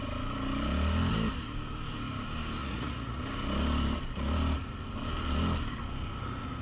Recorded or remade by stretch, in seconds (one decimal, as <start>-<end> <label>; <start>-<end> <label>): 0.0-2.6 recorded; 2.6-3.2 remade; 3.2-6.6 recorded

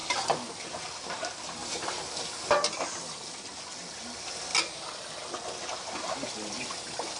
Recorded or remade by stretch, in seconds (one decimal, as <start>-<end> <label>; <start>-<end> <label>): 0.0-7.2 recorded

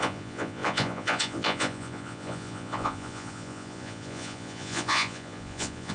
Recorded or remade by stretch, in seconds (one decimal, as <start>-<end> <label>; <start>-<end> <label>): 0.0-5.9 remade